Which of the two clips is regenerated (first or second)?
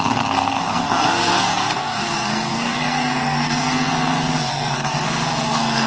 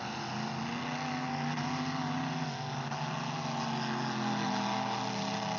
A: first